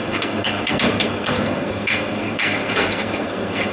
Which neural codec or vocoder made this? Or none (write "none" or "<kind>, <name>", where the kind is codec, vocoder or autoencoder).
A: codec, SNAC